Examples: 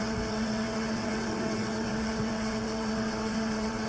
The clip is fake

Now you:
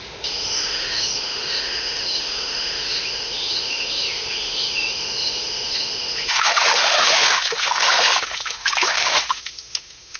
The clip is fake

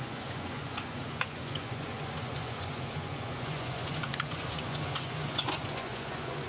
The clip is fake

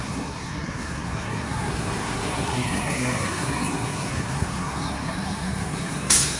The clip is fake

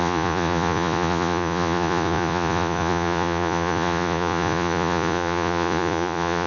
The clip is fake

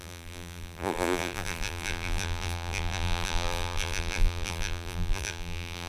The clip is fake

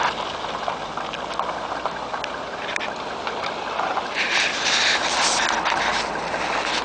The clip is real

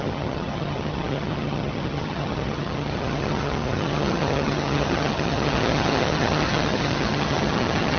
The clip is fake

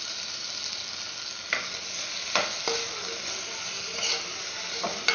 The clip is real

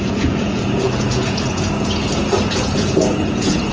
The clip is fake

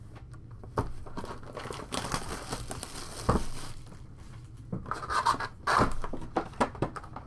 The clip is real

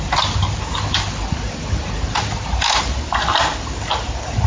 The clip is real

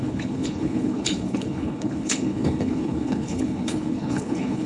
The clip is fake